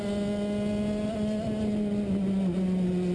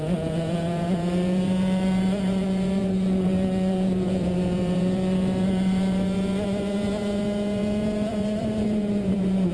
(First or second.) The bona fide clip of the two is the first